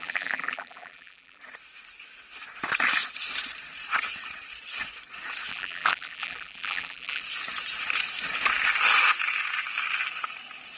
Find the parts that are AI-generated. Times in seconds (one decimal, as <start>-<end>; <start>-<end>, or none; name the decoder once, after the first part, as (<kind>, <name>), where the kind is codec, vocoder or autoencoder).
0.0-1.4 (vocoder, BigVGAN v2); 5.5-7.2